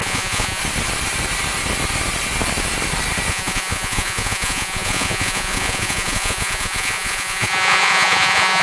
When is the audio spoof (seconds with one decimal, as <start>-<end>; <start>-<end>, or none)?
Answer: 0.0-0.6; 3.3-8.6